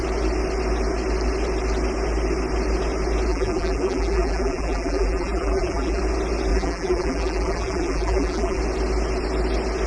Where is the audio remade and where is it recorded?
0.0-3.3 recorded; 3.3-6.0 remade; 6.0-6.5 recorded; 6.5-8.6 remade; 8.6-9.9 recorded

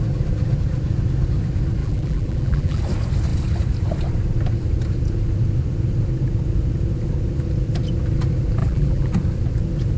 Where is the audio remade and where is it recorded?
0.0-1.8 recorded; 1.8-2.8 remade; 2.8-8.6 recorded; 8.6-9.1 remade; 9.1-10.0 recorded

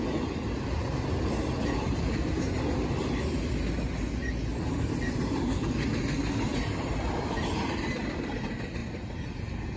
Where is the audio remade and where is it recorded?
0.0-6.5 recorded; 6.5-8.3 remade; 8.3-9.8 recorded

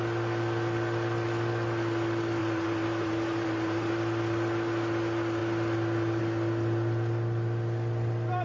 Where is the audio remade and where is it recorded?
0.0-2.4 recorded; 2.4-3.9 remade; 3.9-8.4 recorded

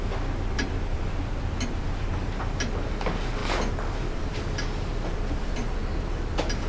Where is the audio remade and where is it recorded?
0.0-6.7 recorded

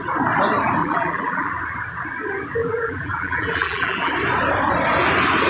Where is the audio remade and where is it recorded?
0.0-0.8 recorded; 0.8-1.5 remade; 1.5-2.6 recorded; 2.6-4.1 remade; 4.1-5.5 recorded

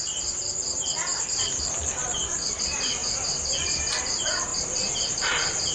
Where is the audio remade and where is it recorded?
0.0-5.7 remade

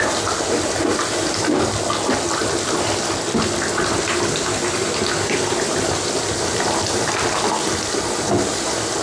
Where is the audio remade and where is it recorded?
0.0-2.4 recorded; 2.4-7.5 remade; 7.5-9.0 recorded